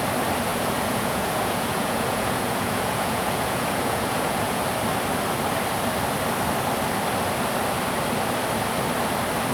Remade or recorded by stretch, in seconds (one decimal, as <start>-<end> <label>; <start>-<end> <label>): 0.0-0.5 recorded; 0.5-4.6 remade; 4.6-9.5 recorded